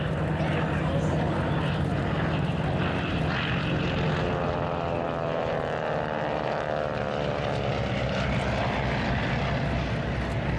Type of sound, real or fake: real